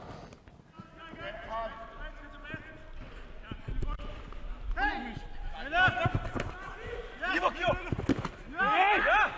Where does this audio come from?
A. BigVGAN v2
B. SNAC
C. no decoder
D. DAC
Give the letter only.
C